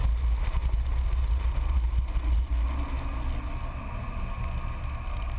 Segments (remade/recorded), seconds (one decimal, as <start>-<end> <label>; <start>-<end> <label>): 0.0-5.4 recorded